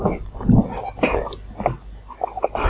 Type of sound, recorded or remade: recorded